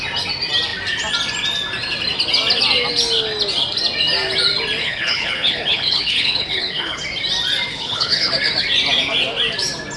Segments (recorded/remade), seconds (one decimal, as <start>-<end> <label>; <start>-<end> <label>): 0.0-4.8 recorded; 4.8-7.0 remade; 7.0-7.7 recorded; 7.7-8.3 remade; 8.3-10.0 recorded